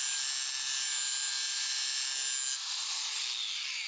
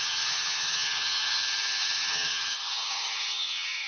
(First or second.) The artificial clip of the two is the second